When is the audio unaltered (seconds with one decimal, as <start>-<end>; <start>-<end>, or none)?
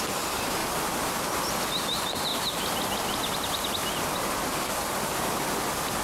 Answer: 0.0-6.0